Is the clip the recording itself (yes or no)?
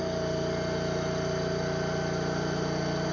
yes